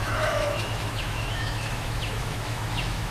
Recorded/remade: remade